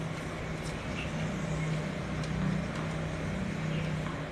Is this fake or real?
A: real